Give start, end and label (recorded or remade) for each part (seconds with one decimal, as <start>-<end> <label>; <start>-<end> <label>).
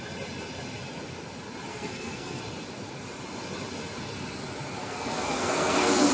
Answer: 0.0-1.7 recorded; 1.7-2.4 remade; 2.4-4.8 recorded; 4.8-6.1 remade